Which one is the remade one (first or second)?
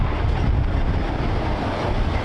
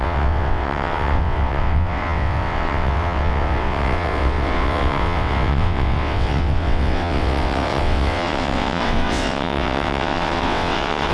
second